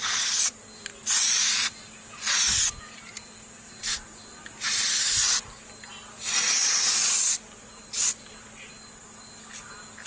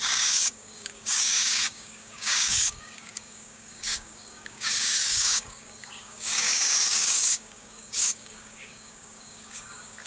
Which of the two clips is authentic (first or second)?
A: first